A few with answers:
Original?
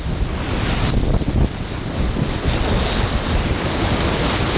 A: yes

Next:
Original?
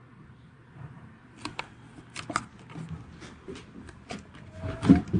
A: yes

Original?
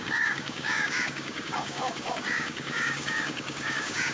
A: no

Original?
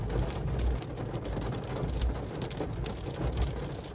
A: yes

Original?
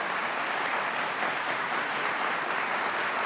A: yes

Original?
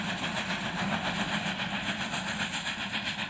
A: yes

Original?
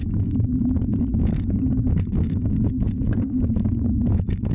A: no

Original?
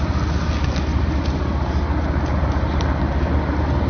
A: yes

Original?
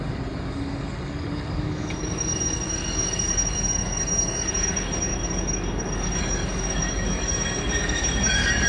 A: no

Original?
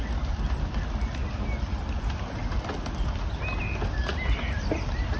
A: yes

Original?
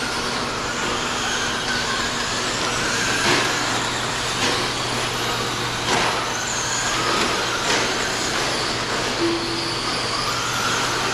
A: yes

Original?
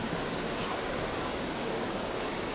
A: no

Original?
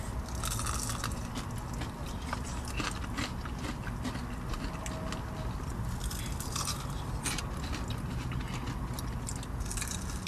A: yes